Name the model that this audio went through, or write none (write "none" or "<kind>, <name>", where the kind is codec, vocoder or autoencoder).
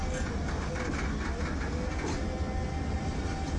none